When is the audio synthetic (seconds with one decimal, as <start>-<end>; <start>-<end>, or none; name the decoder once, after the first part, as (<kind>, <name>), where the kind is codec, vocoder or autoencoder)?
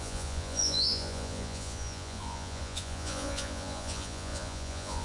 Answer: 0.0-5.0 (vocoder, Vocos)